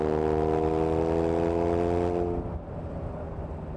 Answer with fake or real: real